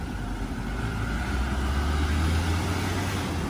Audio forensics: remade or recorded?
recorded